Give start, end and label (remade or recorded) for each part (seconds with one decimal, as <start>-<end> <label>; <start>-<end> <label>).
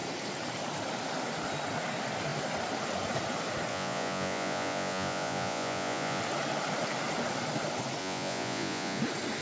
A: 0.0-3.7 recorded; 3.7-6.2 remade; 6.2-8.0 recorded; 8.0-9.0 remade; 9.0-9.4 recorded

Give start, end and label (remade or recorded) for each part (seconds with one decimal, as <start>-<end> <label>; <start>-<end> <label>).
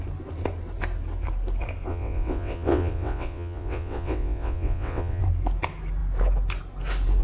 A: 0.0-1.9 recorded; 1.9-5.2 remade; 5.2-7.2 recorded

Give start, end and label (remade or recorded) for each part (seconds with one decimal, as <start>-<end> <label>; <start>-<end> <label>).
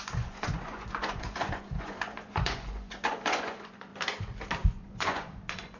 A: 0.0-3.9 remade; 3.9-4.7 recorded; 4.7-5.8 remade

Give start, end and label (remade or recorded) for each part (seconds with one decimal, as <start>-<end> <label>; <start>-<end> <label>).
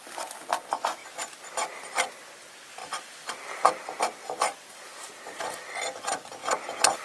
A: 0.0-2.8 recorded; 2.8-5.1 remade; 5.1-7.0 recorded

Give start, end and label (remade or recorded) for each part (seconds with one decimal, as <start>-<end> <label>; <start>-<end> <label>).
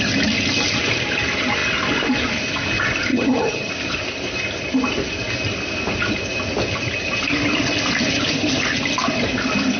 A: 0.0-3.1 recorded; 3.1-3.7 remade; 3.7-9.8 recorded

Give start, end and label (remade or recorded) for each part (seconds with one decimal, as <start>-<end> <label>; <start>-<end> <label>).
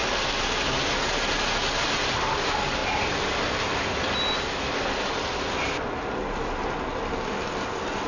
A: 0.0-8.1 recorded